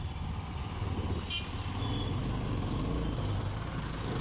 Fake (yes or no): no